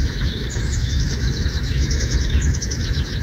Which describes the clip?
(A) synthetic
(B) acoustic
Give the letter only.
A